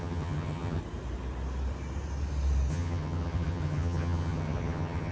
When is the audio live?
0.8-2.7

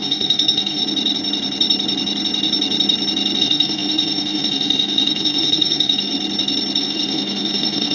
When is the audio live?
0.8-3.4; 6.1-6.8

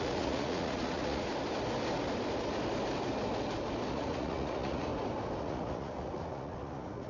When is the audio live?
1.3-3.9; 4.9-5.4